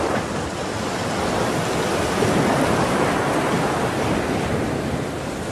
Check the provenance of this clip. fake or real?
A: real